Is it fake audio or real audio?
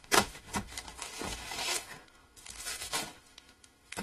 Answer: fake